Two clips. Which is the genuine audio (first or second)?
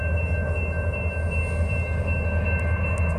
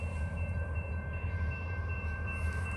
first